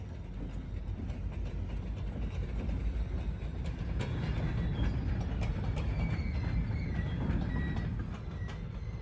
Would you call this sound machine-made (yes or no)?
no